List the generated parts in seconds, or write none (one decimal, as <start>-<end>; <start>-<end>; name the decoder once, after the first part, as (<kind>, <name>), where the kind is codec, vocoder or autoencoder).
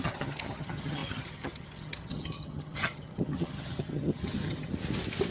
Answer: 0.0-4.7 (vocoder, HiFi-GAN)